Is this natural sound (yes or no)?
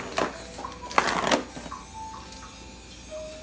yes